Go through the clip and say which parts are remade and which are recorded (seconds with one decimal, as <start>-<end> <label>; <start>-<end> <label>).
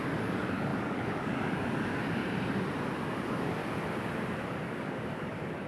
0.0-2.2 remade; 2.2-3.1 recorded; 3.1-3.6 remade; 3.6-4.4 recorded; 4.4-5.7 remade